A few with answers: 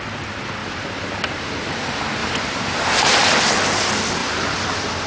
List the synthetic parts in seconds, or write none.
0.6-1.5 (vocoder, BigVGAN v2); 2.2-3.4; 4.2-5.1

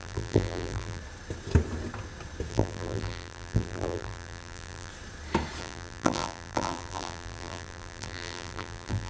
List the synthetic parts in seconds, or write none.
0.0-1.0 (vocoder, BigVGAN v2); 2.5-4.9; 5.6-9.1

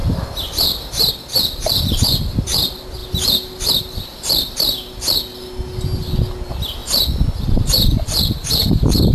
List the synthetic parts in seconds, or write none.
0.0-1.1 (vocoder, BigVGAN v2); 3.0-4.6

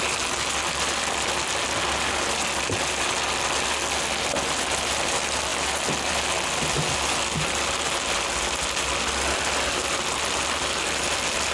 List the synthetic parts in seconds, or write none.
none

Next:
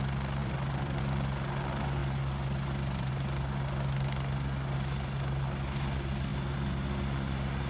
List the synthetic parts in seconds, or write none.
0.4-1.0 (vocoder, BigVGAN v2); 2.0-3.1